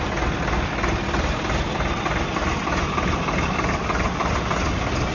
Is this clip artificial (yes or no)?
no